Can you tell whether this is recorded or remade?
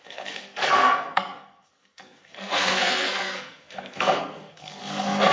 remade